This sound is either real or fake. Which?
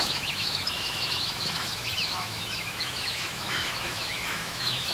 fake